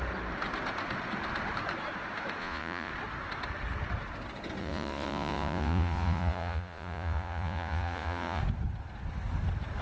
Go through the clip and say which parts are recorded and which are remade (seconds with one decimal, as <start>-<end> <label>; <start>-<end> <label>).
0.0-2.4 recorded; 2.4-2.9 remade; 2.9-4.6 recorded; 4.6-8.4 remade; 8.4-9.8 recorded